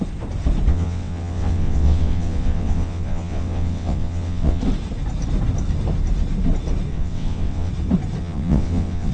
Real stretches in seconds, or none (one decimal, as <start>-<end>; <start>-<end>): 0.0-0.7; 4.6-6.9; 7.7-8.2